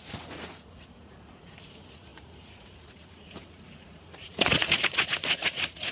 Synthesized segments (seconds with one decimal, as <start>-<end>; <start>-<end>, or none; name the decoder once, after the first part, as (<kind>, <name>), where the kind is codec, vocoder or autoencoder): 0.0-5.9 (vocoder, Vocos)